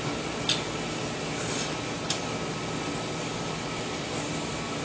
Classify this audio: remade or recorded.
recorded